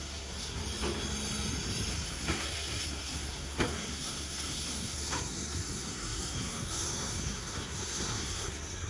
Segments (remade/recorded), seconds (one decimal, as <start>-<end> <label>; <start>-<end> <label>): 0.0-0.6 remade; 0.6-1.9 recorded; 1.9-8.9 remade